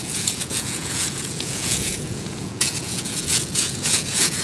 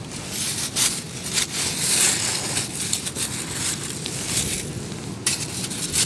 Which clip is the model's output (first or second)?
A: first